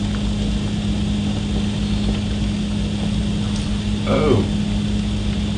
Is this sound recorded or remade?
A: recorded